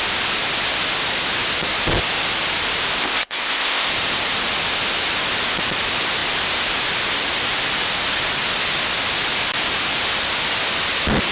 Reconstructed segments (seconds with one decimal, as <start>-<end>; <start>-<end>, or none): 3.0-3.9